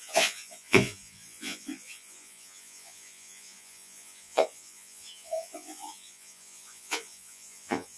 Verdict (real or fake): fake